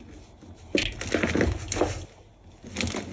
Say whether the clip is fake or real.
real